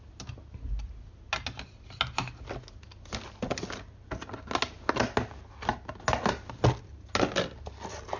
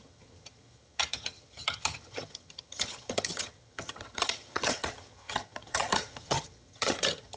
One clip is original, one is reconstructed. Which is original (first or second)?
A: first